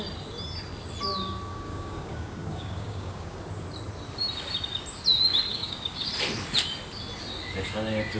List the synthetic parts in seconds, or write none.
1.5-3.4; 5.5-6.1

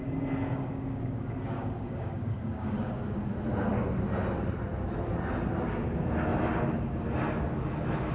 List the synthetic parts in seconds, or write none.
0.5-2.9

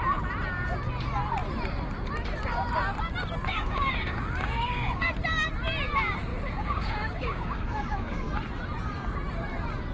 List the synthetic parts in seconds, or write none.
3.5-5.1; 6.3-8.3

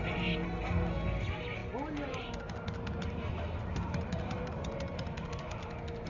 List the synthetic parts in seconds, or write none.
none

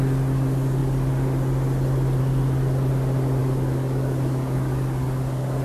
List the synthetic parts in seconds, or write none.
3.4-5.6

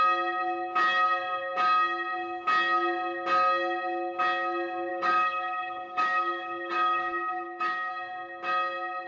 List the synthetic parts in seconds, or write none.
4.9-7.9

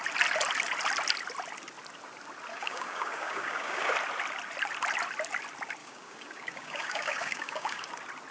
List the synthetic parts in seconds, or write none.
2.5-3.9; 5.8-7.9

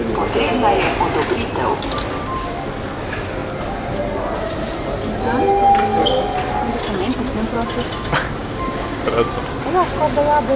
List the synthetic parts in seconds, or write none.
8.4-9.0